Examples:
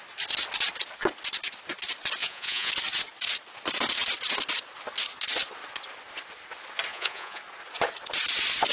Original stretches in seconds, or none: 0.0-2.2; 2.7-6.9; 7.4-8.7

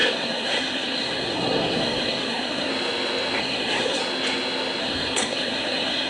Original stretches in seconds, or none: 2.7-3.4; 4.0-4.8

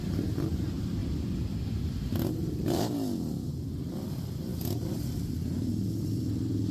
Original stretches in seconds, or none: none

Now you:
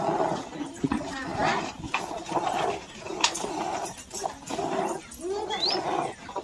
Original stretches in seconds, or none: 0.0-1.3; 3.5-6.4

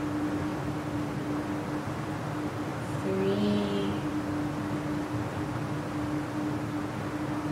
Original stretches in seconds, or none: 0.0-0.5; 1.4-7.5

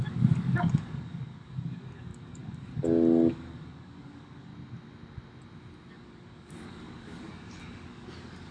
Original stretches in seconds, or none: 4.5-5.9

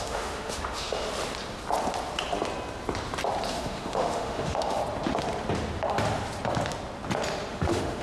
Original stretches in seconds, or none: 1.1-3.5; 4.8-7.5

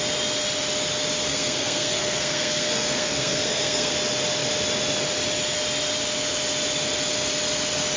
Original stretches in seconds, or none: 0.0-1.3; 3.9-8.0